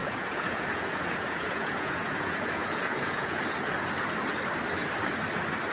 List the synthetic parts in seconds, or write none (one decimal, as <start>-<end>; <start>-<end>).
0.0-3.4